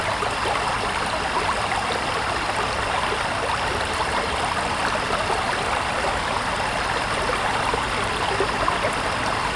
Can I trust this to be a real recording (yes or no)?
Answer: yes